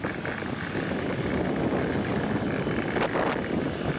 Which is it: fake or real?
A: real